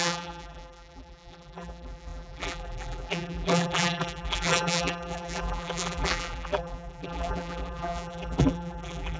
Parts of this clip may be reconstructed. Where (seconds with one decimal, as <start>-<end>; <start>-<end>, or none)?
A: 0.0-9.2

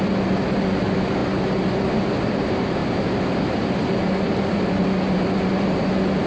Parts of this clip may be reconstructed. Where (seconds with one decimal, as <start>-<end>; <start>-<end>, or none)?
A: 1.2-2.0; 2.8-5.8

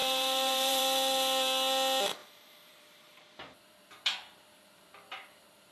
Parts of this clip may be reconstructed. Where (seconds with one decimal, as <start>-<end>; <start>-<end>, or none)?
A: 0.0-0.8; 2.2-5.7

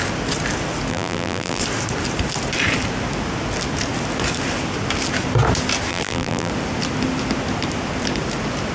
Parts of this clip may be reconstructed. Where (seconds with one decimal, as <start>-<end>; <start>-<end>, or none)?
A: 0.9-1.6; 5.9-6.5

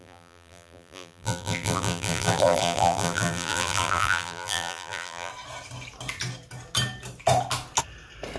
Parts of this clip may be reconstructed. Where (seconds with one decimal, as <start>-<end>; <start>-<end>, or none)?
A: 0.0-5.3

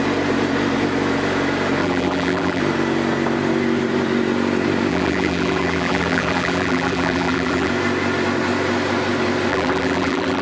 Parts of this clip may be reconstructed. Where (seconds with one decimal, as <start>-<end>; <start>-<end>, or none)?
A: 1.8-2.6; 4.9-7.7; 9.5-10.4

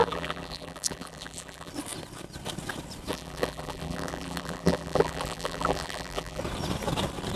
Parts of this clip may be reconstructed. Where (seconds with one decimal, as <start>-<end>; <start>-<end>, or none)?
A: 0.0-1.7; 3.1-6.4